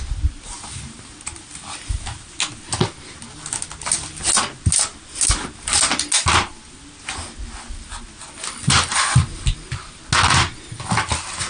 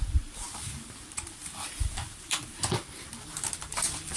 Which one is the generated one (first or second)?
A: second